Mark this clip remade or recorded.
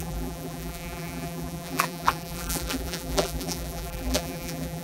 remade